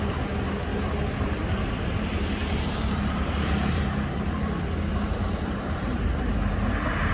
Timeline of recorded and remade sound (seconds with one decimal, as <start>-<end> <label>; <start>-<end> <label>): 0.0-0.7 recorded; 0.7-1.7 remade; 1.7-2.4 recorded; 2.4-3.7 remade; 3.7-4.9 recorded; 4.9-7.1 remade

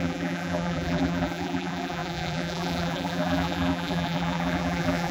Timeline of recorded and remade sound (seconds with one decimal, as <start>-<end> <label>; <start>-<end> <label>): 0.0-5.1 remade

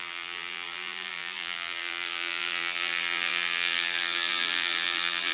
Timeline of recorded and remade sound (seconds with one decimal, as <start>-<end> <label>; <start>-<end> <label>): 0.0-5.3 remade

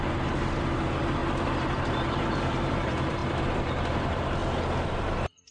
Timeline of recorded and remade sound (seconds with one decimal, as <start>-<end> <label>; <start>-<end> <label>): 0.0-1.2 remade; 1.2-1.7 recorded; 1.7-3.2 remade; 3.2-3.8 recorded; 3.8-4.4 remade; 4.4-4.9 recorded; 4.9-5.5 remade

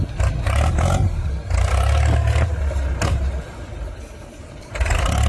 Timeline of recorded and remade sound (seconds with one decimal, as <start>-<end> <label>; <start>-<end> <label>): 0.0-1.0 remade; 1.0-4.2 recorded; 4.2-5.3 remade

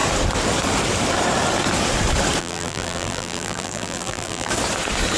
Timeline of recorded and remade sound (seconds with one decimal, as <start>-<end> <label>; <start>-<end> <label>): 0.0-2.4 recorded; 2.4-4.5 remade; 4.5-5.2 recorded

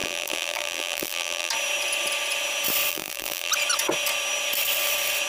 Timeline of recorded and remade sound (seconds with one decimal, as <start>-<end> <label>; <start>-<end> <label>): 0.0-1.5 remade; 1.5-2.9 recorded; 2.9-3.5 remade; 3.5-5.3 recorded